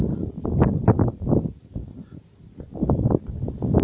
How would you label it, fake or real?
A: real